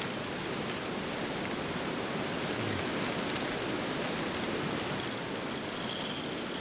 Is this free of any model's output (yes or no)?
yes